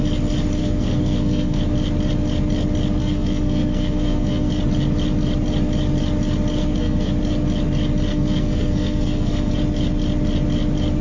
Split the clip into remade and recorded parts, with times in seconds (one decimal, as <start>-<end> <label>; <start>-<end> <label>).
0.0-0.6 recorded; 0.6-1.6 remade; 1.6-3.0 recorded; 3.0-4.5 remade; 4.5-6.6 recorded; 6.6-7.1 remade; 7.1-8.1 recorded; 8.1-9.5 remade; 9.5-11.0 recorded